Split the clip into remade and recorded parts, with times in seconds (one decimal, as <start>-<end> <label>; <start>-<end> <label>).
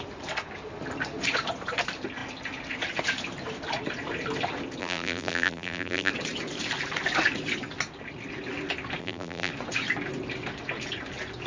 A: 0.0-4.8 recorded; 4.8-6.1 remade; 6.1-9.0 recorded; 9.0-9.5 remade; 9.5-11.5 recorded